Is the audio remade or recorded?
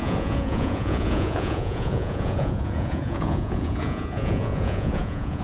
remade